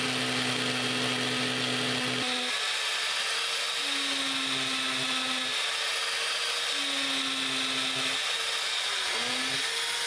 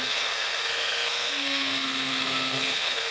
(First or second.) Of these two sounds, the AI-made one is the second